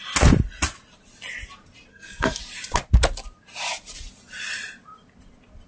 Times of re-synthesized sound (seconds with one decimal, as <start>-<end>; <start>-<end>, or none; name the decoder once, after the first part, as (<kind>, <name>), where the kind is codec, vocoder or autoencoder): 1.9-2.4 (codec, SNAC)